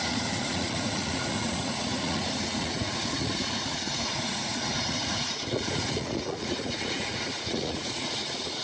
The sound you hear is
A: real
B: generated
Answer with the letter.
B